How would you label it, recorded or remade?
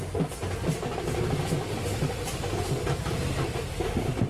recorded